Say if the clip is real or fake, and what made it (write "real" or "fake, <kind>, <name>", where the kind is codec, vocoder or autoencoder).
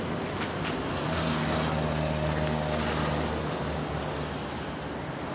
real